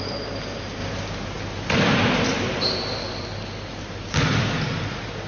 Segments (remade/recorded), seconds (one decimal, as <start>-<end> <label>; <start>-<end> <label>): 0.0-5.3 recorded